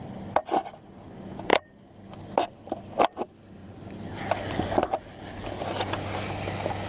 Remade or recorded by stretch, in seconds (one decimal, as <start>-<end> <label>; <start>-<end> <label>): 0.0-6.9 recorded